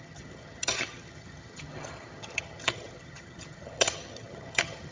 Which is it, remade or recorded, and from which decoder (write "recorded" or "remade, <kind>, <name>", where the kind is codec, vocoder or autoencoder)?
remade, vocoder, HiFi-GAN